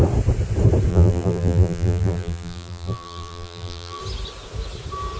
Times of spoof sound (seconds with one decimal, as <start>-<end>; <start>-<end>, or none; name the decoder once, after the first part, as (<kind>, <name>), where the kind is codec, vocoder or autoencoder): 0.9-4.0 (vocoder, BigVGAN v2)